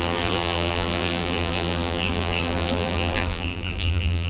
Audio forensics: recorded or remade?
remade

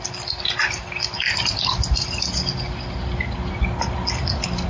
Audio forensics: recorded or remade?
recorded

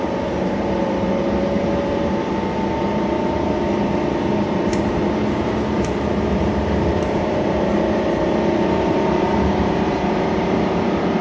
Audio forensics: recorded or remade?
remade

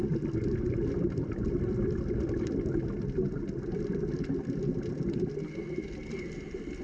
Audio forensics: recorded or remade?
recorded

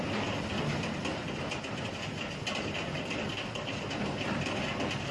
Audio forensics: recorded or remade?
recorded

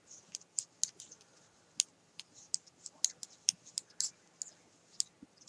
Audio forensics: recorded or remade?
recorded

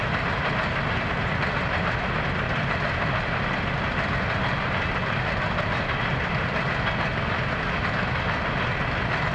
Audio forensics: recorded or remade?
recorded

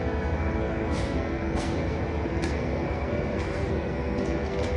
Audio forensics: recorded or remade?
remade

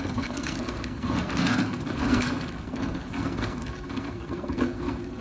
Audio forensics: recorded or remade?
remade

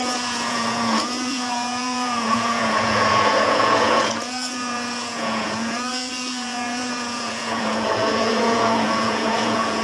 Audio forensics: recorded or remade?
remade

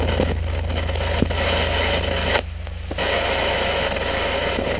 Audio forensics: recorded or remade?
recorded